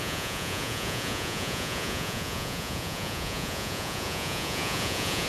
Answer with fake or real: fake